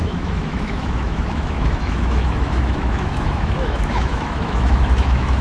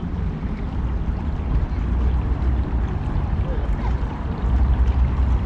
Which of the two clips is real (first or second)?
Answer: second